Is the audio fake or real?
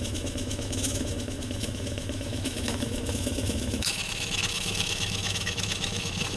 fake